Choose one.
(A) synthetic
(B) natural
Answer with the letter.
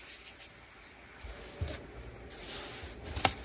B